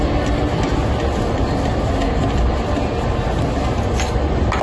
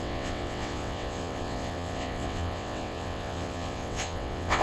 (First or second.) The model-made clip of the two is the second